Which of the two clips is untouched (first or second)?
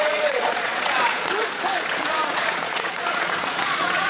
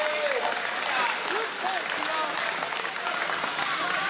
second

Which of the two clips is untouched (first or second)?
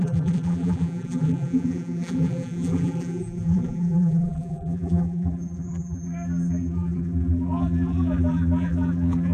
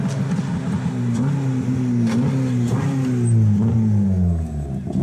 second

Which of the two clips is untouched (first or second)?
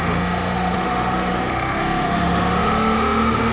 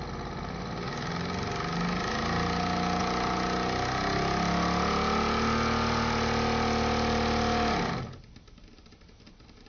second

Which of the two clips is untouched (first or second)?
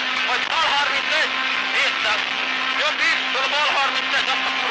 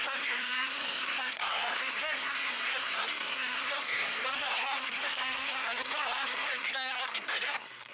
first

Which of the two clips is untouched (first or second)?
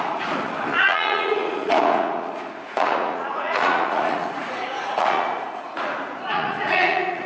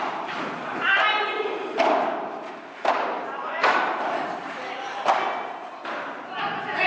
second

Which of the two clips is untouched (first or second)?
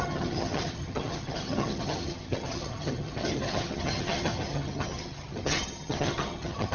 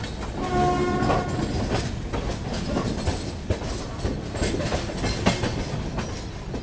second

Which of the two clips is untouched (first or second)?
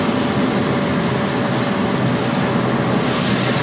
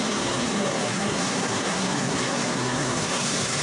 first